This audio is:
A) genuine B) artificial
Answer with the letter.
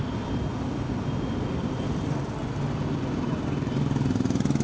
A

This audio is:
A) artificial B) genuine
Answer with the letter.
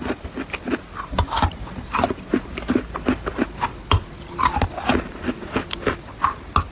B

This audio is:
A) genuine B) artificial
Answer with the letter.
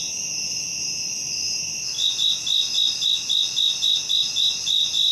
A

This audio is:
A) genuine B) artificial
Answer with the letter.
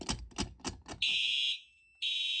A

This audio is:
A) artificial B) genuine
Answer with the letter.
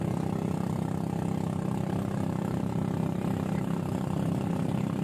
A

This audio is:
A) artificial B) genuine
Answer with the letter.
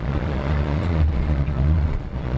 A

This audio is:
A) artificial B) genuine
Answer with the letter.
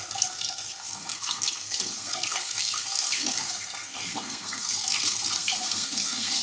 A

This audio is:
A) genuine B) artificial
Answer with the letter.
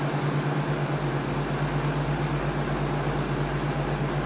A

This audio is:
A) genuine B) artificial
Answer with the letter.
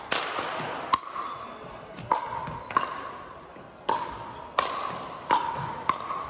A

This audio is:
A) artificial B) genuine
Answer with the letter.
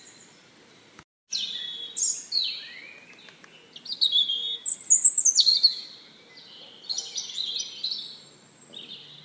B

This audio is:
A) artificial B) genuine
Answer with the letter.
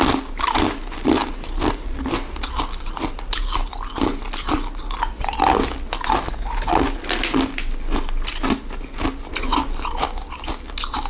B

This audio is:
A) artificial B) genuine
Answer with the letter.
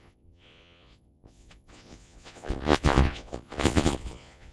A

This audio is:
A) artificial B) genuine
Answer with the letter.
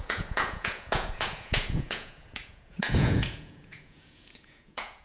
A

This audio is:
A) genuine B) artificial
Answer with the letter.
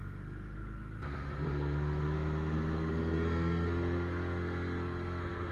B